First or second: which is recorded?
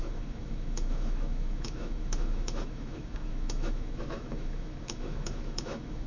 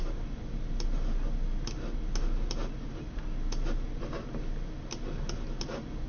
second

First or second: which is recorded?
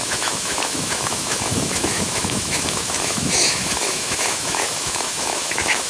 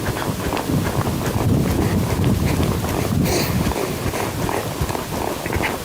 second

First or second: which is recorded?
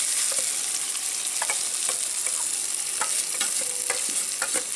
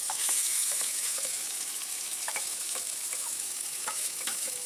first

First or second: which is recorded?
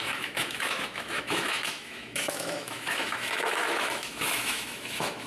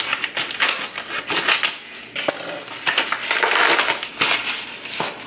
second